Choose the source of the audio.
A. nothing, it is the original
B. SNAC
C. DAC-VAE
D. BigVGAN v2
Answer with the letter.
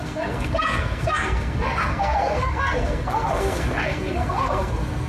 B